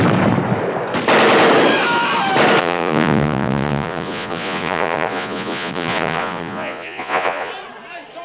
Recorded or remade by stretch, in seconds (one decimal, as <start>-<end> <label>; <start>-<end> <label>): 0.0-2.6 recorded; 2.6-7.5 remade; 7.5-8.2 recorded